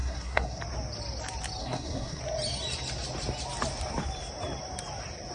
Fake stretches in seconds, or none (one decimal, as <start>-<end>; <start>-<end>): 0.0-0.6; 1.6-2.2